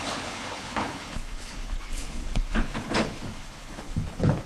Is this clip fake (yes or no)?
yes